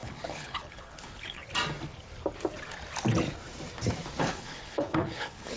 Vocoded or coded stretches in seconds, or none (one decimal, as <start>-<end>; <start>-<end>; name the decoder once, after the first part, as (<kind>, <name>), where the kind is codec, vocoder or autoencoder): 0.0-1.4 (codec, HILCodec); 4.2-5.6